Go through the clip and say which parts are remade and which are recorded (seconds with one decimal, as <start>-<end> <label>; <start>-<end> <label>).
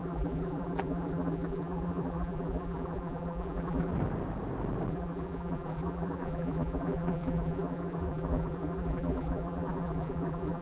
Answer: 0.0-3.9 remade; 3.9-4.9 recorded; 4.9-10.6 remade